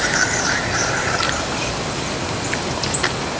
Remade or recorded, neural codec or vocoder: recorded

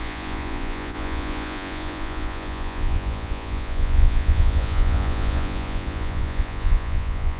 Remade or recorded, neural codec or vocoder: remade, vocoder, Vocos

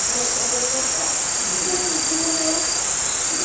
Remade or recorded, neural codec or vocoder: recorded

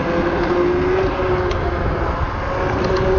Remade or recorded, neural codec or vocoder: recorded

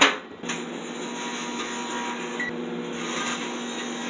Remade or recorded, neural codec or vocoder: recorded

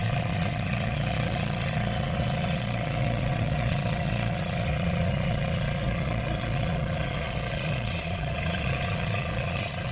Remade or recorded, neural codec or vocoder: remade, vocoder, Vocos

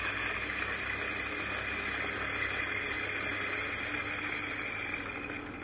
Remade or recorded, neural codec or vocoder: recorded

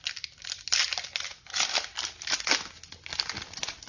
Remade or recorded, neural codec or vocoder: recorded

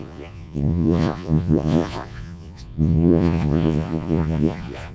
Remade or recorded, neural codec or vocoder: remade, vocoder, Vocos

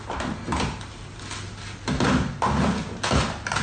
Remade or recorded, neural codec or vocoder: recorded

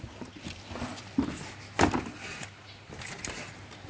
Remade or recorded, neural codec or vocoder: recorded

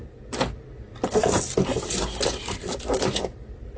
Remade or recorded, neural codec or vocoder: recorded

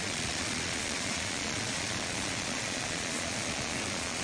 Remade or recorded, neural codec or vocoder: remade, vocoder, Vocos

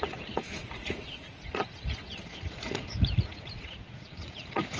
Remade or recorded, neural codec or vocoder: remade, vocoder, Vocos